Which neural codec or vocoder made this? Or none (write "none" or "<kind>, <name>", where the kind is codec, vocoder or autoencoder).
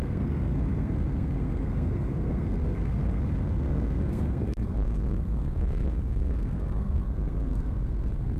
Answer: codec, SNAC